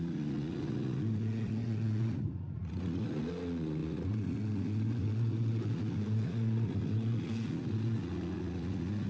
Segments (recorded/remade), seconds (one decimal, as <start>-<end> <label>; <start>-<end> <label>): 0.0-9.1 remade